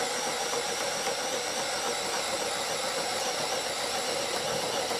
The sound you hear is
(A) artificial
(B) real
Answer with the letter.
B